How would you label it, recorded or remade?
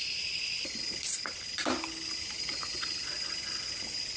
recorded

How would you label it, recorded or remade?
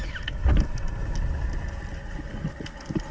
recorded